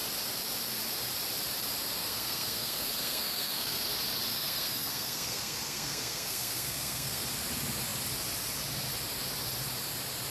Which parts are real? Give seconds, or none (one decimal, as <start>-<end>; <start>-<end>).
0.0-2.0; 3.9-4.3; 7.2-10.3